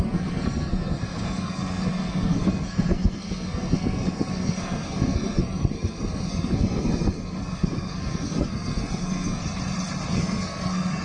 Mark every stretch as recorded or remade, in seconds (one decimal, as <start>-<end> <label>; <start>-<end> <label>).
0.0-9.4 remade; 9.4-10.1 recorded; 10.1-11.0 remade